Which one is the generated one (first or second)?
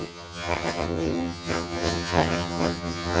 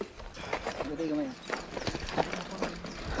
first